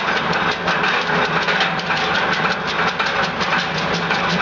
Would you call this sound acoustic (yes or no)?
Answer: yes